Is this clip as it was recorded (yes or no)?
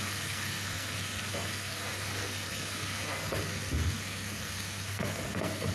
no